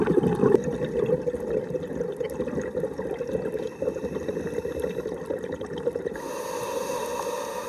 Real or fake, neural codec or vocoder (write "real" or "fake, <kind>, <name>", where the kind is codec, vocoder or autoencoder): real